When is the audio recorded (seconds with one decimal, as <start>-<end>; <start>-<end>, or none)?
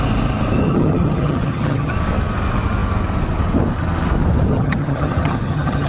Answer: 0.0-0.6; 1.9-4.5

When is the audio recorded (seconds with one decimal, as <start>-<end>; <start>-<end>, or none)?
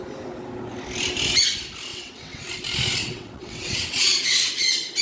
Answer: 0.0-1.9; 2.5-3.0; 4.5-5.0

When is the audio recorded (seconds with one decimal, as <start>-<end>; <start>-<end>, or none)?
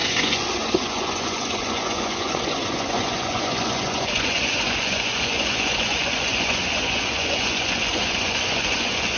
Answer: none